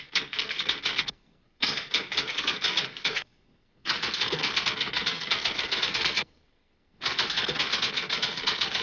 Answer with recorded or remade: remade